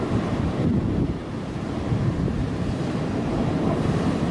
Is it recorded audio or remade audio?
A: recorded